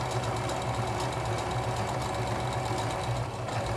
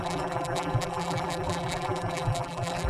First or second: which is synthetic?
second